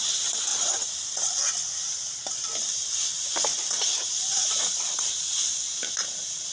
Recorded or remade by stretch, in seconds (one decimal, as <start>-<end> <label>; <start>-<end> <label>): 0.0-0.5 recorded; 0.5-1.2 remade; 1.2-3.5 recorded; 3.5-5.1 remade; 5.1-6.5 recorded